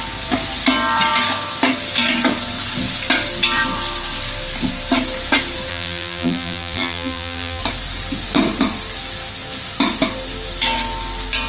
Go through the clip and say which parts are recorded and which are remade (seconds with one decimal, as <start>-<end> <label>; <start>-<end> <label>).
0.0-5.7 recorded; 5.7-7.6 remade; 7.6-11.5 recorded